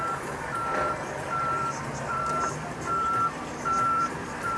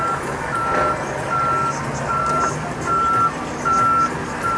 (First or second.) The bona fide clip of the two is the second